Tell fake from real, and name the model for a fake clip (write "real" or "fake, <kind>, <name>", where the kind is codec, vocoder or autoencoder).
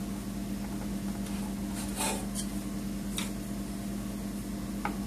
real